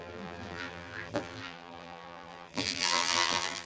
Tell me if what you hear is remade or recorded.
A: remade